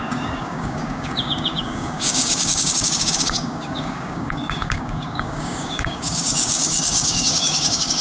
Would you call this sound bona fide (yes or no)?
no